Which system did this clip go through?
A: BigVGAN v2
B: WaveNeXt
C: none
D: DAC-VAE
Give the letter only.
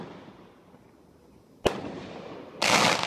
C